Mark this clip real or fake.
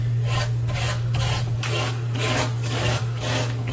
fake